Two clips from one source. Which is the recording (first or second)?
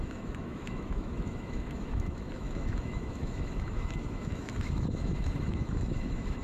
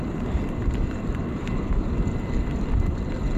second